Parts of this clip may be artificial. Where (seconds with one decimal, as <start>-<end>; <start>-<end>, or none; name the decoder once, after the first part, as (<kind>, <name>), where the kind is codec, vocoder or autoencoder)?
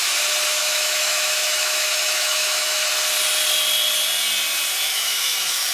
0.6-2.9 (autoencoder, DAC-VAE); 4.9-5.7